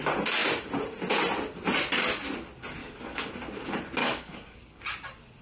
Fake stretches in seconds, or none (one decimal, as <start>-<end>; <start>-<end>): 2.8-3.3; 4.0-4.8